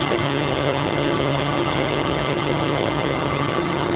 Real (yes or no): no